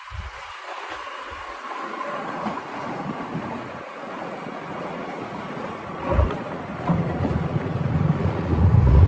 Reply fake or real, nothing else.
fake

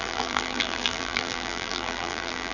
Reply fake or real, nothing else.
fake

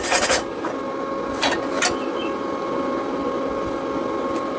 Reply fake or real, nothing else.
real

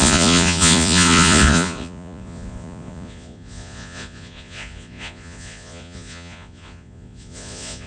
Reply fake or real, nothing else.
fake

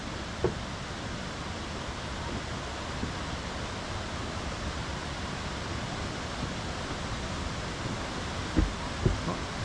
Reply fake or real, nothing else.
real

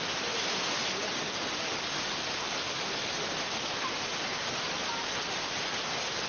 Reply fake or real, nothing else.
real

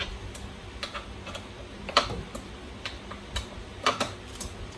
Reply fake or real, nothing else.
fake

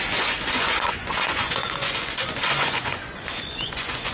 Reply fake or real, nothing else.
fake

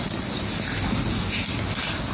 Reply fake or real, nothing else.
real